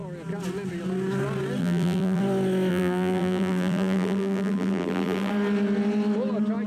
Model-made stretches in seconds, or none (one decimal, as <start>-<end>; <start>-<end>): 1.6-2.2; 2.7-5.3